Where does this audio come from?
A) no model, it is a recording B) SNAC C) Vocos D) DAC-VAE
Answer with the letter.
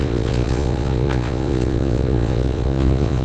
C